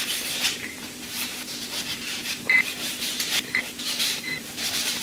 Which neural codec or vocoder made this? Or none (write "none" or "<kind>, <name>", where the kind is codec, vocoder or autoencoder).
vocoder, BigVGAN v2